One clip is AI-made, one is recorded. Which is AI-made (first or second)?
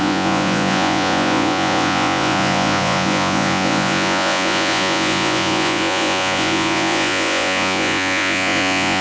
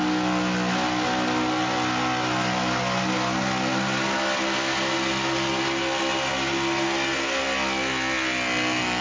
first